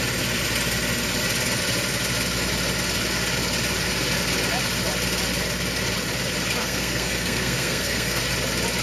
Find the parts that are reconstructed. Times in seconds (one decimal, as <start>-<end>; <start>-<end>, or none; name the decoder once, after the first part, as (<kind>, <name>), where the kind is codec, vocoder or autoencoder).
6.6-8.2 (codec, SNAC)